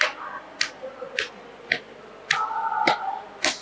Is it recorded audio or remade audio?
recorded